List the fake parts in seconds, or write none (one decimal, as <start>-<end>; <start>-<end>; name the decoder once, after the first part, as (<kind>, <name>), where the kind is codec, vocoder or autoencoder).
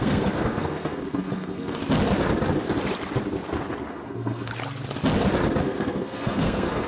0.0-1.8 (codec, SNAC); 3.9-4.5; 5.6-6.9